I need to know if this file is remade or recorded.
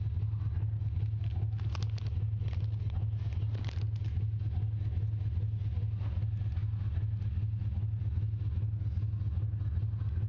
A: recorded